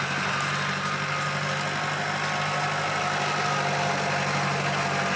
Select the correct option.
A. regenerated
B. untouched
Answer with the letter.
B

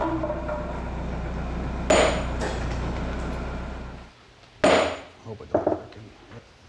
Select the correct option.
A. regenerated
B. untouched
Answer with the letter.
B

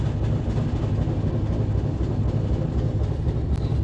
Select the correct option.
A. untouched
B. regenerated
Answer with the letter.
A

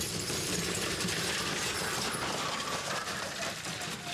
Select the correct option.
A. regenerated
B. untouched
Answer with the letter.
A